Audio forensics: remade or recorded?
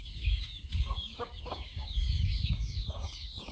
remade